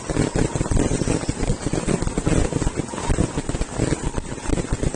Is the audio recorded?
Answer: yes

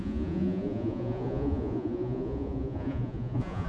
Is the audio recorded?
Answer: no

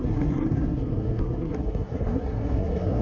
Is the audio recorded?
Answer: no